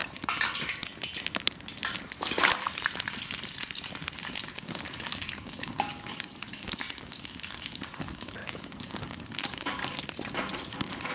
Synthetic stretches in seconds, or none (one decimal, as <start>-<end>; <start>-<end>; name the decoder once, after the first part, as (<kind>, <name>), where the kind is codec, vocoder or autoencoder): 4.5-9.8 (codec, DAC); 10.7-11.1